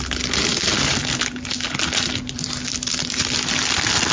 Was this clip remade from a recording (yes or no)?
no